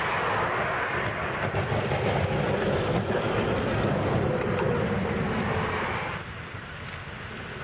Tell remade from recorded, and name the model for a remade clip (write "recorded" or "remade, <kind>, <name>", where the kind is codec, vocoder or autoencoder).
recorded